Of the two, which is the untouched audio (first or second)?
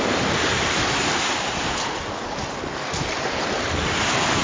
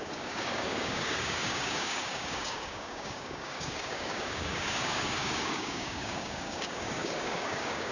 first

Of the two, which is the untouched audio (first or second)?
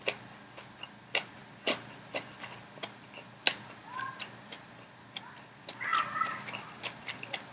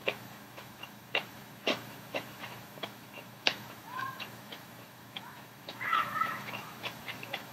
first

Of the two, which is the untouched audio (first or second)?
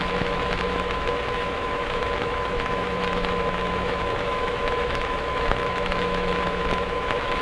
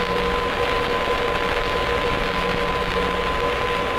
second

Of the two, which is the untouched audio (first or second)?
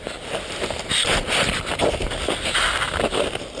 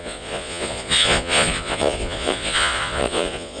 first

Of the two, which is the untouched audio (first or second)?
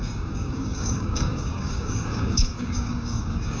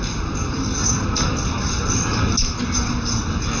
second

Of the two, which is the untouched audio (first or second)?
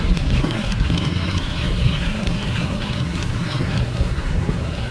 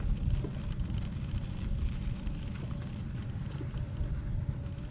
second